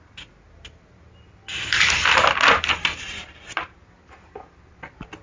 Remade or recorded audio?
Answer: recorded